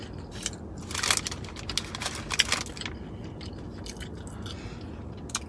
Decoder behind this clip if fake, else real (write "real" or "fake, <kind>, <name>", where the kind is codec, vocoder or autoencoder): real